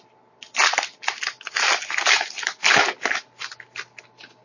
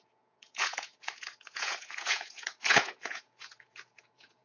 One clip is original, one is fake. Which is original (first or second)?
first